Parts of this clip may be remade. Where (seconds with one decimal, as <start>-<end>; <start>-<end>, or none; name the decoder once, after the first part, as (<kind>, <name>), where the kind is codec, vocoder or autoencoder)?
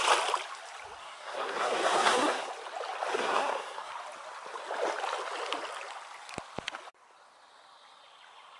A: 1.0-2.5 (codec, SNAC); 3.1-3.9